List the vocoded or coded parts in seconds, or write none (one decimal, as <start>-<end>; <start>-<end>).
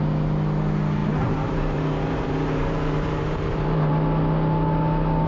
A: 1.0-3.9